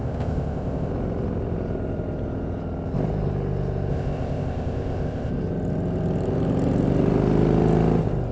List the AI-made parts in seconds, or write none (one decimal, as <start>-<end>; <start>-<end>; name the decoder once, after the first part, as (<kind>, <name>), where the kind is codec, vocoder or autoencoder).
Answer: 0.0-0.9 (codec, ZipCodec); 3.9-5.3